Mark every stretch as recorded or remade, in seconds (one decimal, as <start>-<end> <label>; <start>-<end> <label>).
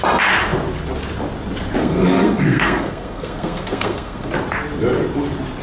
0.0-1.8 recorded; 1.8-4.3 remade; 4.3-5.6 recorded